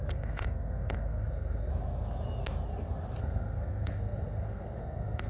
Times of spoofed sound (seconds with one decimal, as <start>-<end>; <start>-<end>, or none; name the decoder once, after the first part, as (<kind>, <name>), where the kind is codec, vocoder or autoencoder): 0.0-1.7 (codec, SNAC); 3.2-5.3